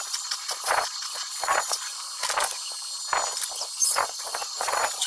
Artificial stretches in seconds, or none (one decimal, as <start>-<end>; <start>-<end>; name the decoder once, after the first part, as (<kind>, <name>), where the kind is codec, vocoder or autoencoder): 0.0-1.9 (vocoder, Vocos); 3.8-5.1